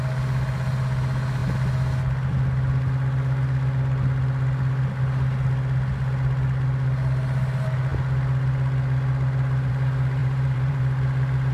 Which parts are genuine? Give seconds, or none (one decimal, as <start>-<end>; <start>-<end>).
0.0-10.2; 10.8-11.5